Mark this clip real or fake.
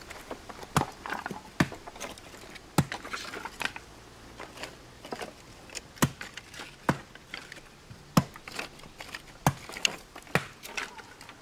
real